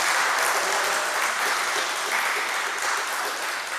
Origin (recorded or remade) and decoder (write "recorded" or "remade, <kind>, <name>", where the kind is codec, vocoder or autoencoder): recorded